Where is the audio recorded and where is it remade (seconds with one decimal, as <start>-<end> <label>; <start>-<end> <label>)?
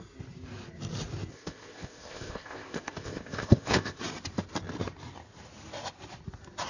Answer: 0.0-1.3 recorded; 1.3-4.0 remade; 4.0-6.7 recorded